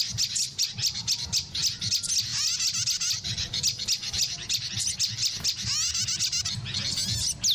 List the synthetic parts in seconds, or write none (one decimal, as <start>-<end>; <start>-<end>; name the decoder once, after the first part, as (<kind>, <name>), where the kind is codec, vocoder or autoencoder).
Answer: none